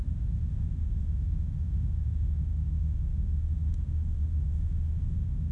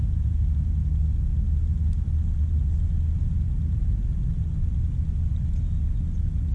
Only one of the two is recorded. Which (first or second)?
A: second